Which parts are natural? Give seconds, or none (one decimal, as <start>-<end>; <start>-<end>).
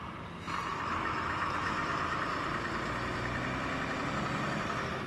0.0-0.7; 2.2-5.1